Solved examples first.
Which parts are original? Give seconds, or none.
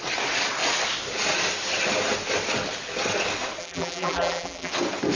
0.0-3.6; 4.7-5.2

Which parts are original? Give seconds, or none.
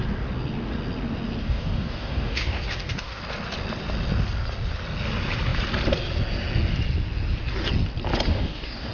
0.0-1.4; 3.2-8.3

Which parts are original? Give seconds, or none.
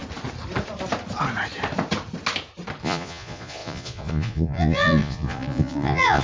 0.0-2.8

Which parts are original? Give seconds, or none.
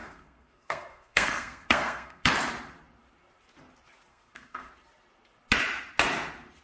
2.3-4.1; 4.7-6.6